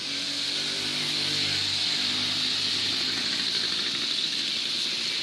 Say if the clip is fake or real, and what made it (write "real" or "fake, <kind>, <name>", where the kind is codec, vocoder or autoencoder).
real